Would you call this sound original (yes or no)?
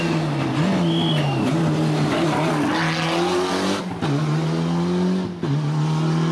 yes